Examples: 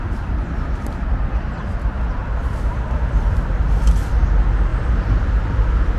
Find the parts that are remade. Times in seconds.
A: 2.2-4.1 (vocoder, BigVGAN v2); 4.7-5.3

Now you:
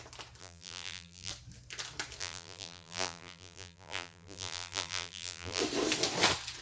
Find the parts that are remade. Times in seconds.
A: 0.4-1.3 (vocoder, BigVGAN v2); 2.2-5.6

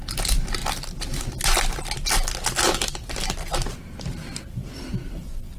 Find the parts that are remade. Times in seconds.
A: 0.0-0.6 (vocoder, BigVGAN v2); 4.0-5.6

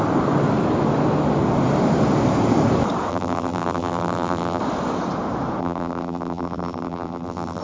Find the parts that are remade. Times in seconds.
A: 3.1-4.6 (vocoder, BigVGAN v2); 5.6-7.6

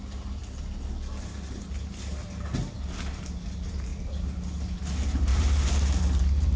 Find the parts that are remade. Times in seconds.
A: 5.3-6.6 (vocoder, BigVGAN v2)

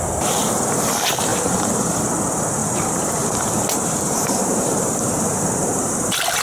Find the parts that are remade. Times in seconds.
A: 1.3-2.0 (vocoder, BigVGAN v2); 2.6-6.4

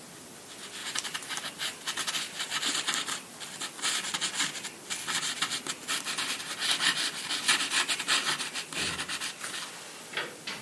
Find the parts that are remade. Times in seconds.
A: none

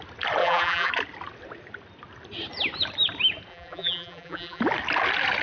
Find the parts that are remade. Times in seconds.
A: 0.4-0.9 (vocoder, BigVGAN v2); 3.5-4.6